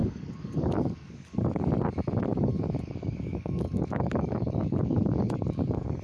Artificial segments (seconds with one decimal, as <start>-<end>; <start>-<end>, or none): 0.0-1.7; 2.3-6.0